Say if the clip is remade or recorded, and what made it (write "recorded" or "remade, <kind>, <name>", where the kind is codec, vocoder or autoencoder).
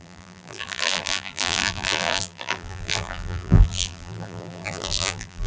remade, vocoder, BigVGAN v2